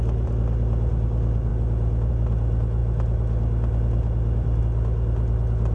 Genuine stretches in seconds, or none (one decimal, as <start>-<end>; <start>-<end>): 0.0-5.7